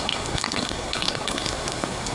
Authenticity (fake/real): fake